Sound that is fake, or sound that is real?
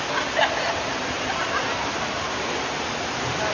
real